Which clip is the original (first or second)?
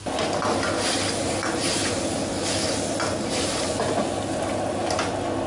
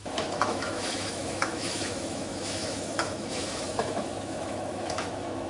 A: first